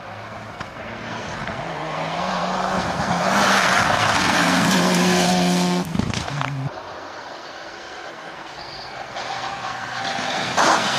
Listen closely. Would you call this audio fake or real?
fake